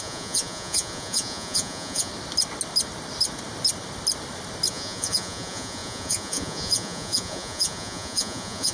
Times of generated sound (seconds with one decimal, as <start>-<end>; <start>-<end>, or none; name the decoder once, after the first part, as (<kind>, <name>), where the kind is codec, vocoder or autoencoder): 0.0-2.1 (vocoder, Vocos); 4.7-8.7